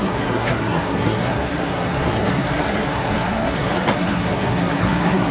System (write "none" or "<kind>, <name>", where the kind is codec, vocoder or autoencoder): codec, SNAC